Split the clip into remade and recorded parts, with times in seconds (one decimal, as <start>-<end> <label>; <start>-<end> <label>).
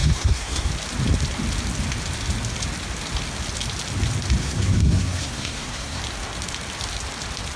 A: 0.0-0.7 remade; 0.7-4.4 recorded; 4.4-6.0 remade; 6.0-7.6 recorded